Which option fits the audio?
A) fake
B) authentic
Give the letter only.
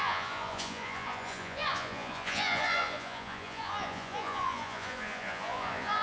A